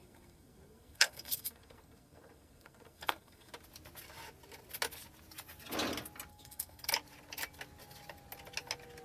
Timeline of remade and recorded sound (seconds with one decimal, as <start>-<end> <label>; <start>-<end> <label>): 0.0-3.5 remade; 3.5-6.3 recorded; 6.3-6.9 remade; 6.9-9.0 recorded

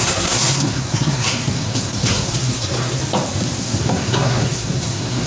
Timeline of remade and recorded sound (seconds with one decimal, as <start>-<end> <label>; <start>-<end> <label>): 0.0-3.0 remade; 3.0-3.6 recorded; 3.6-5.3 remade

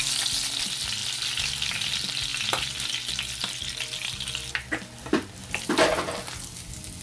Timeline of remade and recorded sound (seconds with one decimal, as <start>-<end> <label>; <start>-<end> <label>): 0.0-7.0 recorded